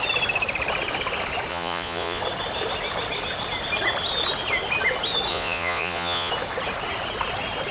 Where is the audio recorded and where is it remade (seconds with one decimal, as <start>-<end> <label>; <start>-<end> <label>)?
0.0-1.5 recorded; 1.5-2.2 remade; 2.2-5.3 recorded; 5.3-6.3 remade; 6.3-7.7 recorded